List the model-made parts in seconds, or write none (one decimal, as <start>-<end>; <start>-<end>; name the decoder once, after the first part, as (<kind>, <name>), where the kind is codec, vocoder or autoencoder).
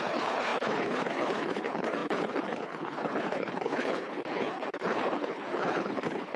0.0-6.4 (codec, HILCodec)